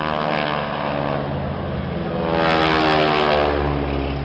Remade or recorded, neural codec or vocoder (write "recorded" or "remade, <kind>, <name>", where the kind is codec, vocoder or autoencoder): recorded